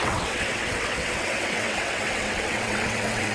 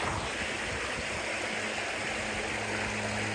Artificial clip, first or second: first